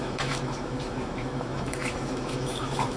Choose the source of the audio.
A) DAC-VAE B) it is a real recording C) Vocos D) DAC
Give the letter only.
A